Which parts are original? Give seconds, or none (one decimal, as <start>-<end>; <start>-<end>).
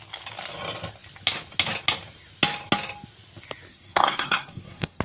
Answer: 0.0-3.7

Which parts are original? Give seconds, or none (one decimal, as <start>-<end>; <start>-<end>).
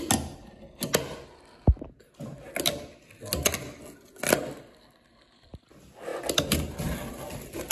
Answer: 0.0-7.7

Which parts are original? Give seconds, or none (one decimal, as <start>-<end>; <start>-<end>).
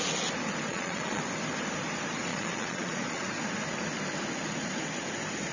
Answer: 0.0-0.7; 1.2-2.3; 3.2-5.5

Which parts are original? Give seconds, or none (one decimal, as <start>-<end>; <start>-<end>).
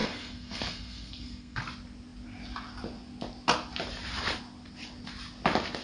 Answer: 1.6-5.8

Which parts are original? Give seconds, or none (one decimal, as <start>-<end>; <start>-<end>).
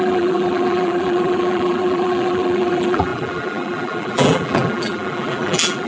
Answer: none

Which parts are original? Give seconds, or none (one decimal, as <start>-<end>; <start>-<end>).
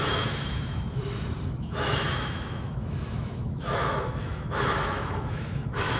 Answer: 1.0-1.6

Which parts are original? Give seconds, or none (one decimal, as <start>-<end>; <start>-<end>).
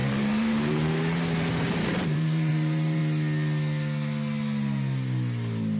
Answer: 3.0-5.8